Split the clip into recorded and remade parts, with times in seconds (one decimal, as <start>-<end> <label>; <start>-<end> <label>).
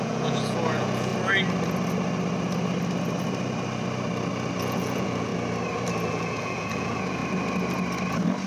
0.0-1.1 remade; 1.1-4.6 recorded; 4.6-5.3 remade; 5.3-6.1 recorded; 6.1-7.2 remade; 7.2-8.5 recorded